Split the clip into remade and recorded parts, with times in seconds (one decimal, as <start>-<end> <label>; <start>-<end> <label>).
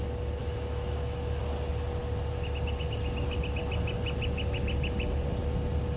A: 0.0-0.4 recorded; 0.4-1.4 remade; 1.4-6.0 recorded